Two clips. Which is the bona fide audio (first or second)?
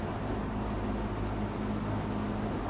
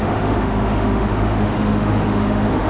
first